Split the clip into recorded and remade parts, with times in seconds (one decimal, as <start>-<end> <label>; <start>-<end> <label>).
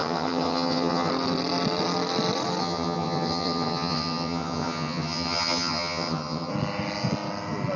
0.0-1.1 remade; 1.1-2.6 recorded; 2.6-6.5 remade; 6.5-7.8 recorded